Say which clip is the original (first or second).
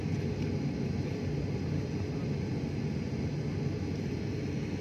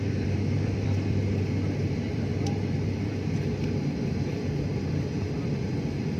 first